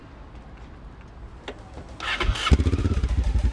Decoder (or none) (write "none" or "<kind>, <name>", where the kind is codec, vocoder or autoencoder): none